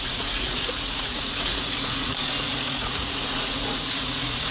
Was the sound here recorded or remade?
remade